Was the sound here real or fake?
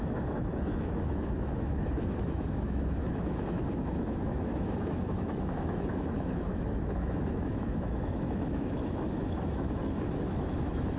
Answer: fake